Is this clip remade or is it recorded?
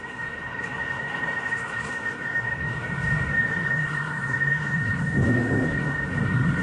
remade